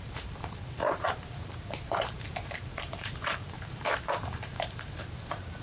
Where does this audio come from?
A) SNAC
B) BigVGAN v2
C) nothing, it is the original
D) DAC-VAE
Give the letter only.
B